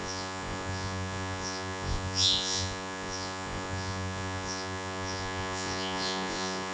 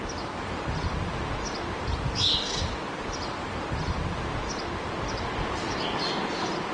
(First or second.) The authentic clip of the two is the second